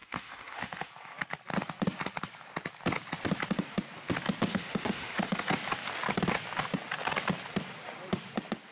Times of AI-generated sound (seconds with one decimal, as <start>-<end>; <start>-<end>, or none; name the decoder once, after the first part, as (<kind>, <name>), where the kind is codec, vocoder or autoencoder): 0.0-0.9 (autoencoder, DAC-VAE); 4.5-5.5